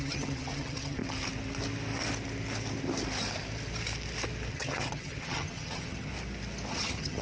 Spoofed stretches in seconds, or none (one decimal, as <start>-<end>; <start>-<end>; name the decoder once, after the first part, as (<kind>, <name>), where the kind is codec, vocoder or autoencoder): 0.0-1.0 (vocoder, HiFi-GAN); 4.5-6.1; 6.7-7.2